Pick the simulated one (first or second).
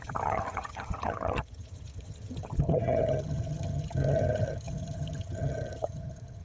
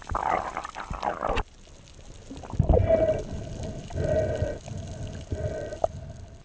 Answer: first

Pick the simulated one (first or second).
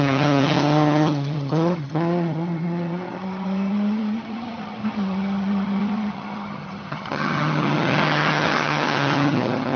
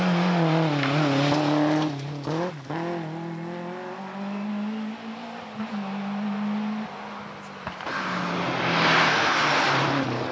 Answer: first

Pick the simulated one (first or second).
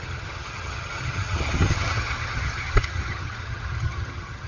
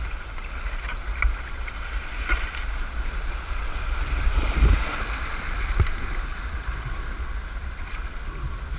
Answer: first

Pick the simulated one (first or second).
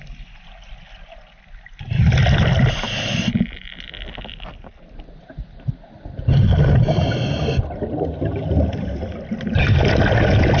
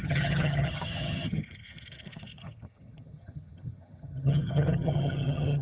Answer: second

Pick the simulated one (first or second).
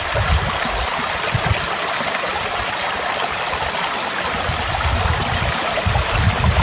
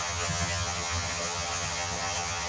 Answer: second